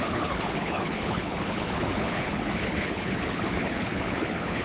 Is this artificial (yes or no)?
yes